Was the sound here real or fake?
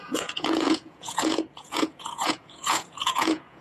fake